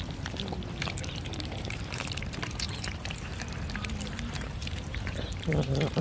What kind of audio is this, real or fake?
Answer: fake